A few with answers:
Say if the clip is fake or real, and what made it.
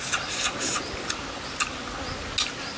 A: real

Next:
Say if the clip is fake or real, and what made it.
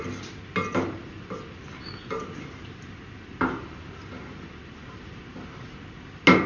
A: real